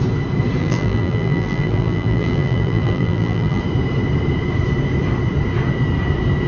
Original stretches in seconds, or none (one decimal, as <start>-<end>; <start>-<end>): 0.0-0.6; 3.6-6.5